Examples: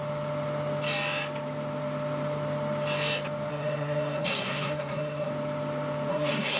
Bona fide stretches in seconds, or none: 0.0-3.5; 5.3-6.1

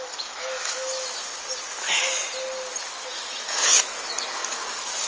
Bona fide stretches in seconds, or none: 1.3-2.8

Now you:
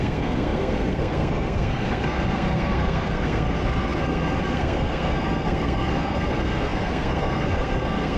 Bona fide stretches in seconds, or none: none

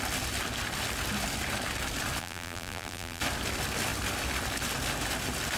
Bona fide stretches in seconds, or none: 0.0-2.2; 3.2-5.6

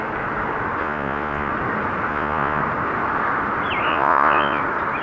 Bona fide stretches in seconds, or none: 0.0-0.8; 1.5-2.1; 2.6-3.9; 4.6-5.0